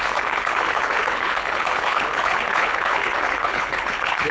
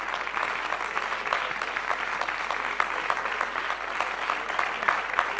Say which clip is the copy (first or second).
first